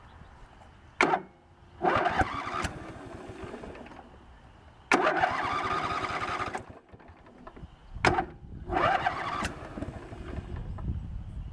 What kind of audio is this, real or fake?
real